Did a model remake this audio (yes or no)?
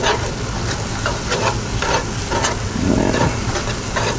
no